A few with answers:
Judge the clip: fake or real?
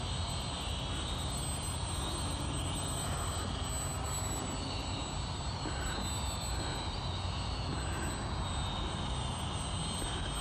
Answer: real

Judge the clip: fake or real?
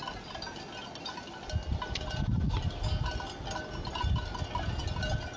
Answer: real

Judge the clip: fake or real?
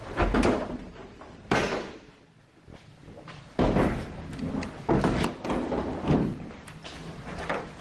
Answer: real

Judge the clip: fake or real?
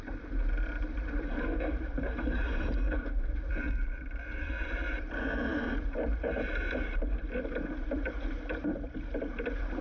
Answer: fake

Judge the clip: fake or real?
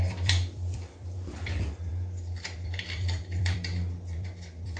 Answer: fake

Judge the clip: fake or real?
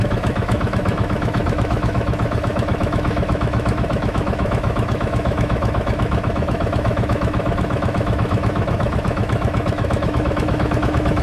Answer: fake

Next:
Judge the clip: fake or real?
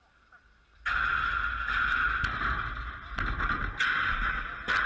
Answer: real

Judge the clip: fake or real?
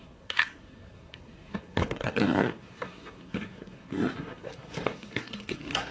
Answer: fake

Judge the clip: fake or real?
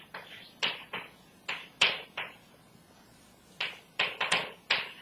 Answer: real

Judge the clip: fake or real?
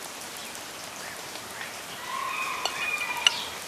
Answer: real